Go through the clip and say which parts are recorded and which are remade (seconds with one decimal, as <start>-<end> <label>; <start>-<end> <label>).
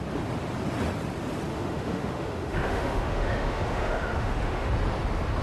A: 0.0-1.5 recorded; 1.5-4.7 remade; 4.7-5.4 recorded